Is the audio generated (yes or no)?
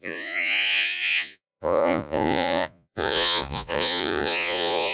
yes